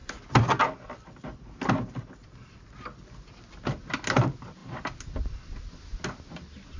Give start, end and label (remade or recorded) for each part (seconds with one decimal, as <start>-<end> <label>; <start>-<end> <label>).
0.0-6.8 recorded